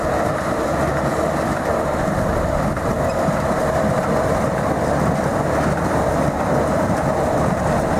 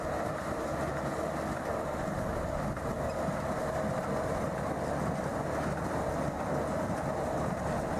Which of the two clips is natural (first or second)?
second